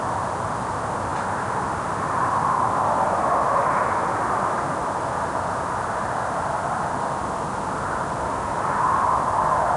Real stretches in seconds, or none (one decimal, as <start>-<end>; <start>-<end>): 0.0-9.8

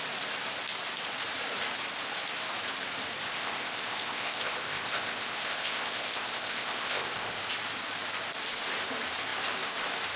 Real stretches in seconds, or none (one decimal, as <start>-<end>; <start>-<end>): 0.0-3.3; 7.4-10.2

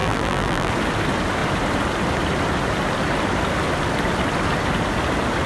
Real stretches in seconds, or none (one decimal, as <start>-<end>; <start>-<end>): 0.7-5.5